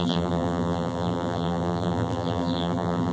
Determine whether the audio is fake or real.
fake